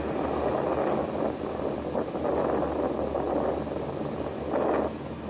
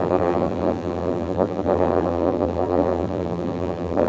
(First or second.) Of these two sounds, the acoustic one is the first